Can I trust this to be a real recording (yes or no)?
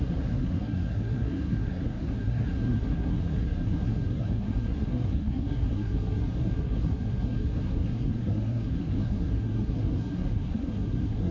no